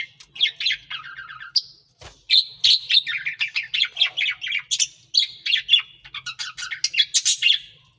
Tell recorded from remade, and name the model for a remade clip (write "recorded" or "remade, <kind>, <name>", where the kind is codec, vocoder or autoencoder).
recorded